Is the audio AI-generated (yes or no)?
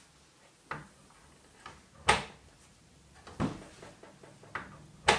no